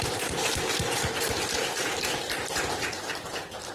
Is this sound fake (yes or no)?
yes